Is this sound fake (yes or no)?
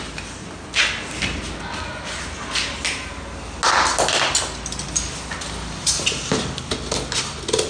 no